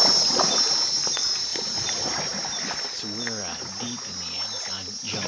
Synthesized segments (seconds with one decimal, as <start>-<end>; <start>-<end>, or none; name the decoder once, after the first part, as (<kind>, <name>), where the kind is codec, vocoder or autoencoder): none